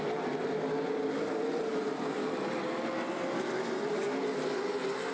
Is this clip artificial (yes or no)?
no